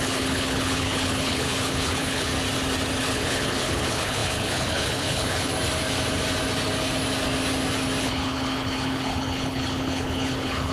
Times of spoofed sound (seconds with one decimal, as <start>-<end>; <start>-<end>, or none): 0.0-2.3; 3.0-5.5; 8.0-10.7